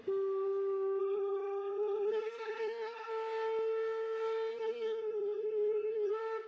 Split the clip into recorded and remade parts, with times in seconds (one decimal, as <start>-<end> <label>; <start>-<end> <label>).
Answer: 0.0-1.0 recorded; 1.0-3.1 remade; 3.1-4.5 recorded; 4.5-6.1 remade; 6.1-6.5 recorded

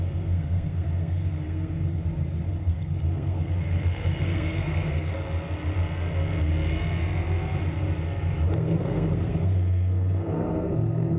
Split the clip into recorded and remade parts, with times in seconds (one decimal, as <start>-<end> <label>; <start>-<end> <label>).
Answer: 0.0-2.0 remade; 2.0-2.5 recorded; 2.5-5.1 remade; 5.1-8.5 recorded; 8.5-11.2 remade

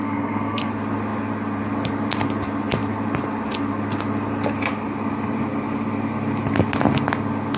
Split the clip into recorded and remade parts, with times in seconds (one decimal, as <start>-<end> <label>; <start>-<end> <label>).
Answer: 0.0-0.7 remade; 0.7-7.6 recorded

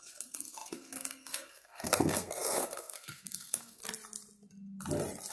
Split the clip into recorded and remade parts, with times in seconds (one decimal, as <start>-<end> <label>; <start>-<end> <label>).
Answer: 0.0-3.8 remade; 3.8-5.3 recorded

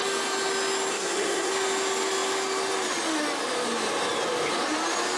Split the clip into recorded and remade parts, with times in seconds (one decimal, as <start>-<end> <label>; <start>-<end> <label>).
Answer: 0.0-0.9 recorded; 0.9-1.5 remade; 1.5-5.2 recorded

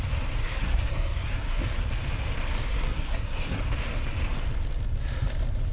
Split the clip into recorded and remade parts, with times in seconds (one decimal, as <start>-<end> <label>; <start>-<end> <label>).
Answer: 0.0-0.4 recorded; 0.4-1.6 remade; 1.6-2.7 recorded; 2.7-3.6 remade; 3.6-5.7 recorded

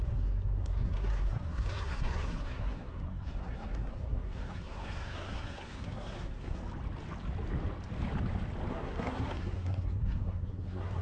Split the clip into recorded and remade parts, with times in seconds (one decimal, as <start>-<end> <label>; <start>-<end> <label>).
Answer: 0.0-6.6 remade; 6.6-8.7 recorded; 8.7-11.0 remade

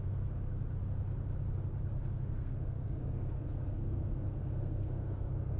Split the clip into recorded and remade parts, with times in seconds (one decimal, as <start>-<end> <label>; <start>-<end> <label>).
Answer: 0.0-0.5 remade; 0.5-2.1 recorded; 2.1-5.6 remade